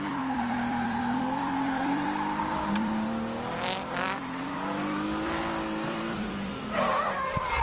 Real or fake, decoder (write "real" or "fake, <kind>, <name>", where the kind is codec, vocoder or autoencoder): fake, vocoder, BigVGAN v2